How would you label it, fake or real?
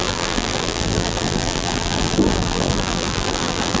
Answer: fake